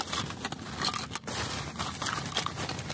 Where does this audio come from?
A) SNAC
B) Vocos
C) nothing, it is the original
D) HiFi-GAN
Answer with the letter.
C